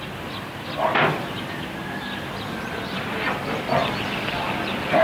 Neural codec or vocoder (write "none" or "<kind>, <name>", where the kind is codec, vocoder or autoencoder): none